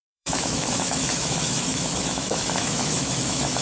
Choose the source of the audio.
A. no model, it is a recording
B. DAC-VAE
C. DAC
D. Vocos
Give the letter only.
B